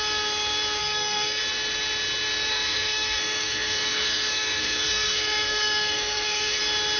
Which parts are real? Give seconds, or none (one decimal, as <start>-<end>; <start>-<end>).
0.0-0.8; 1.4-2.5; 6.6-7.0